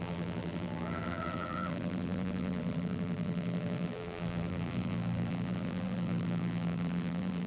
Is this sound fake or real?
fake